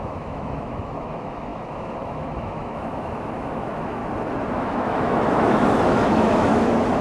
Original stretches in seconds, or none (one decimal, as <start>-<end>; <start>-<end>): 4.0-4.6